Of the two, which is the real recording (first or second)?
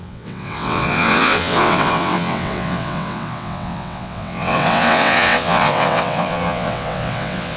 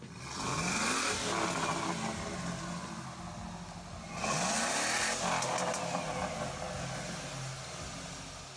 second